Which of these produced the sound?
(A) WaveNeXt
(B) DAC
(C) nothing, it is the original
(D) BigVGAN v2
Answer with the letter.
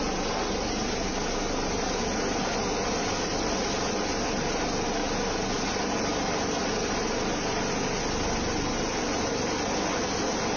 C